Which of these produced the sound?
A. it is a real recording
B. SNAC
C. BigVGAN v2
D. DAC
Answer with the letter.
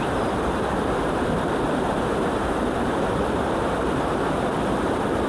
C